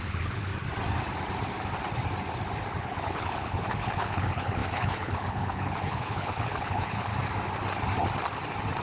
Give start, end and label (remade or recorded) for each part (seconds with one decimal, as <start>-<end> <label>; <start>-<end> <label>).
0.0-0.5 remade; 0.5-2.8 recorded; 2.8-7.1 remade; 7.1-8.8 recorded